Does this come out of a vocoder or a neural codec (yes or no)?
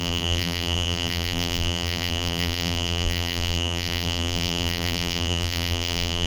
yes